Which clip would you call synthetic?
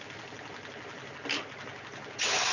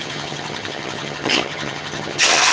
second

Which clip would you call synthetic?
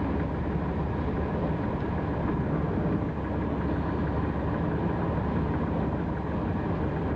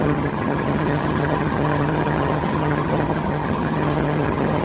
second